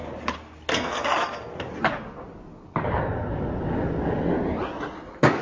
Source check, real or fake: real